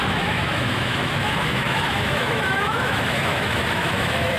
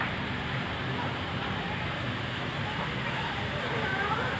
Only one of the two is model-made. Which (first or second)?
first